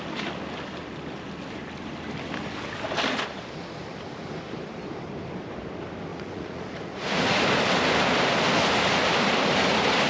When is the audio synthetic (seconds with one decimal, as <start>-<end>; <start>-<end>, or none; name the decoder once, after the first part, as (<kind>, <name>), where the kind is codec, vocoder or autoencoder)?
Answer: 6.1-7.4 (vocoder, Vocos)